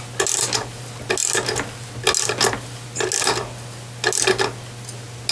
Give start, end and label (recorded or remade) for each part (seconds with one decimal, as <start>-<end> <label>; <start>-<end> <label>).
0.0-5.3 recorded